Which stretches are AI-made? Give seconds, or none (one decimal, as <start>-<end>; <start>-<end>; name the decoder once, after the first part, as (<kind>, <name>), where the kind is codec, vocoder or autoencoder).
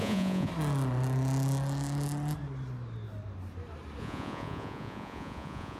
0.0-0.5 (vocoder, Vocos); 4.0-5.8